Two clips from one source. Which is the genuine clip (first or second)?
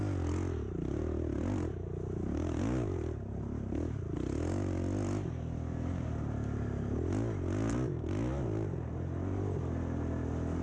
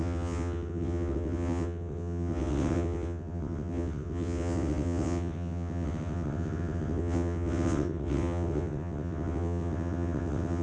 first